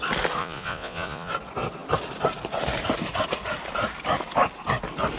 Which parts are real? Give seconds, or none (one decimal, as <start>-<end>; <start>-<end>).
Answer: 0.0-0.4; 1.3-5.2